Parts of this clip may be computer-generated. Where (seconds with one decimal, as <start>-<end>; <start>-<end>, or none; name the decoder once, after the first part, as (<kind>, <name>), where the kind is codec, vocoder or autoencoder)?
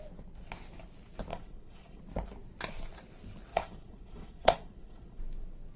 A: 1.3-2.0 (vocoder, Vocos); 3.5-5.2